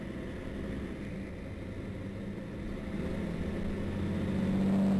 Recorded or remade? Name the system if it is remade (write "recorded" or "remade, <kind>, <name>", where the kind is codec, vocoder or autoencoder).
recorded